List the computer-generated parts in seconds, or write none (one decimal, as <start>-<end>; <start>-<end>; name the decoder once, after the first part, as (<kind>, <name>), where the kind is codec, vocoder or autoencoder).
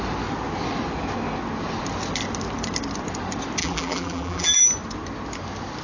3.6-4.6 (vocoder, BigVGAN v2)